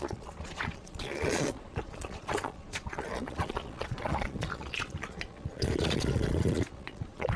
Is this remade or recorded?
remade